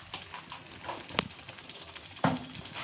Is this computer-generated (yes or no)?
no